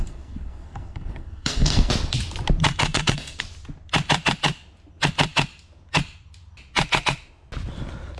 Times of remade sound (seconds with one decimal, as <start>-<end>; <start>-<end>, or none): 0.0-1.9; 2.8-3.4